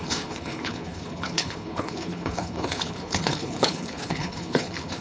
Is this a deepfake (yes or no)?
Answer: yes